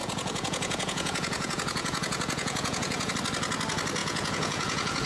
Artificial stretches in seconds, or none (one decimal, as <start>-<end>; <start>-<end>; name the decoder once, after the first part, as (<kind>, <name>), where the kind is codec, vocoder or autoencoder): 0.0-3.1 (vocoder, Vocos); 4.0-5.1